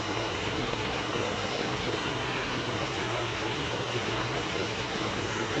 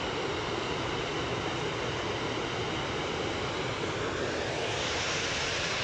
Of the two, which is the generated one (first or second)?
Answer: first